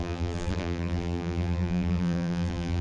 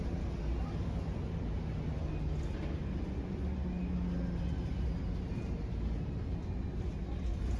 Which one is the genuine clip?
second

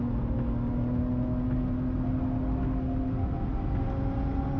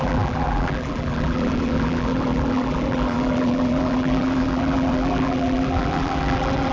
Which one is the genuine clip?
first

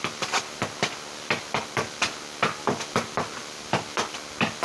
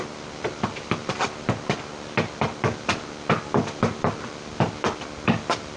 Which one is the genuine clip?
first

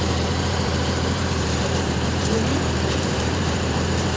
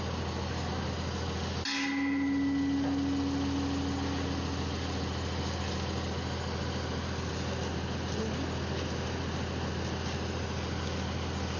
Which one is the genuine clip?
second